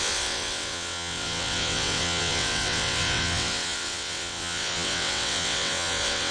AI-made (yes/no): yes